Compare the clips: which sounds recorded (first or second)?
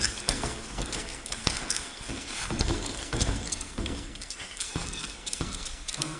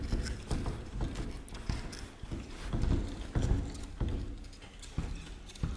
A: second